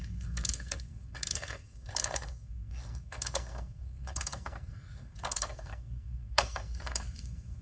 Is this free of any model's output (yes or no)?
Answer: no